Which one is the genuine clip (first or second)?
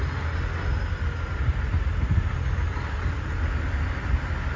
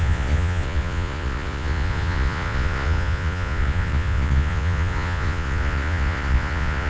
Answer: first